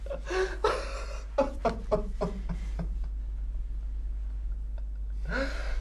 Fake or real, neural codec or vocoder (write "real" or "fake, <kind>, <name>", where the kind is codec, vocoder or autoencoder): real